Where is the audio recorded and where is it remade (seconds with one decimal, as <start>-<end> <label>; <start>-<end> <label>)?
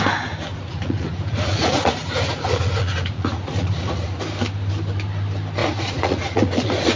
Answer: 0.0-0.5 recorded; 0.5-4.2 remade; 4.2-5.6 recorded; 5.6-7.0 remade